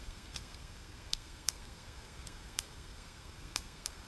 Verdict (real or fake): fake